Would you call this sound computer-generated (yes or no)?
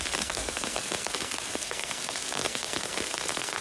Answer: yes